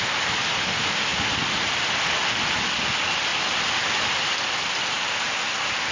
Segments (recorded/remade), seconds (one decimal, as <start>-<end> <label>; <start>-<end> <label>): 0.0-1.1 recorded; 1.1-1.7 remade; 1.7-5.9 recorded